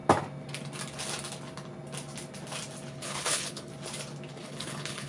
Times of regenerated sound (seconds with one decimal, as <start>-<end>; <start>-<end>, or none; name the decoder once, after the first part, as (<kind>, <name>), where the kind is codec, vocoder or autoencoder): 2.9-3.7 (codec, HILCodec); 4.4-5.1